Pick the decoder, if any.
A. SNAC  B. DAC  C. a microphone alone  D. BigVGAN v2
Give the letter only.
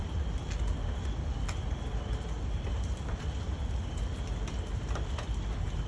C